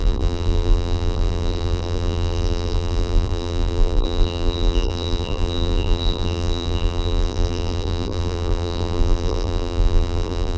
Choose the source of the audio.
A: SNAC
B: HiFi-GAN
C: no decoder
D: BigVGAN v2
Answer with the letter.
D